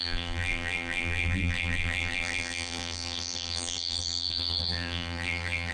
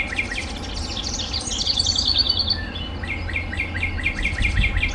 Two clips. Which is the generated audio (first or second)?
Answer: first